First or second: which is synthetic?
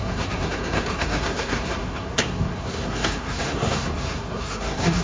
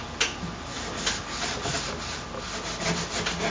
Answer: first